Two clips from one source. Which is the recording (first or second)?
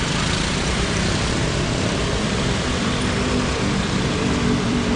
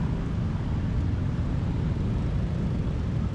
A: second